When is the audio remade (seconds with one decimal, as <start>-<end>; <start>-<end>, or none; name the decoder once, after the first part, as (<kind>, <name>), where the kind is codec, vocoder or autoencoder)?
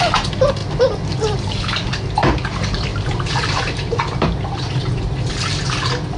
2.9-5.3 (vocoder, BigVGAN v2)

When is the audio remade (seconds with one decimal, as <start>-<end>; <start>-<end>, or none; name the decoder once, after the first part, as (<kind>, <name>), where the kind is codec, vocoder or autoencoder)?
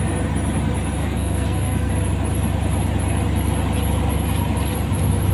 1.0-1.9 (codec, SNAC)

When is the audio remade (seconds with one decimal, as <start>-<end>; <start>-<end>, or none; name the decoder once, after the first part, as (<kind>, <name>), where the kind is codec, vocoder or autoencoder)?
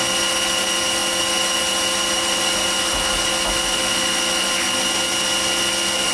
none